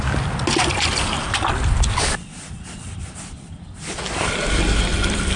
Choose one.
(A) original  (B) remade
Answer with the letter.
A